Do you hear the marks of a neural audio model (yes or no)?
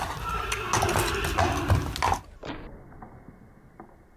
no